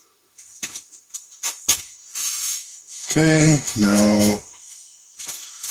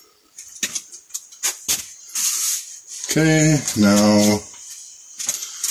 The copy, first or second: first